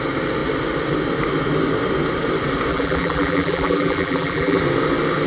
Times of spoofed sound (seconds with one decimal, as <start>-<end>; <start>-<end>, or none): 2.7-4.6